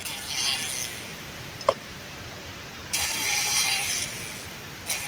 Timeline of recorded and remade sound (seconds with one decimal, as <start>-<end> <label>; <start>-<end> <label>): 0.0-1.1 recorded; 1.1-4.2 remade; 4.2-5.1 recorded